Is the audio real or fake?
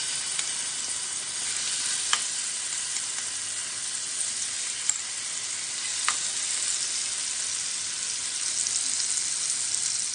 real